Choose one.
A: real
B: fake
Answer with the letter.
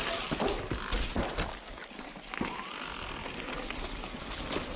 A